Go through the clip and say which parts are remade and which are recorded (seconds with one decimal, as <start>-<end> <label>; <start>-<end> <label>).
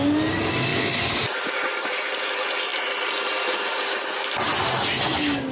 0.0-0.7 recorded; 0.7-2.2 remade; 2.2-5.5 recorded